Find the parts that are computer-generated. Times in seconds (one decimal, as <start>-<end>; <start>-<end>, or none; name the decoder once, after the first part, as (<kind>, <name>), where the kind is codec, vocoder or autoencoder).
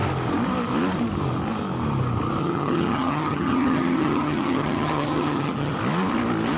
2.4-5.7 (vocoder, HiFi-GAN)